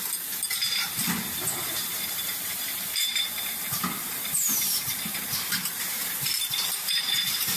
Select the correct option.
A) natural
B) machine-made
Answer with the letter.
B